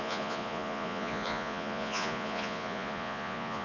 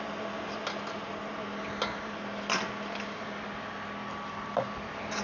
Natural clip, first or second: second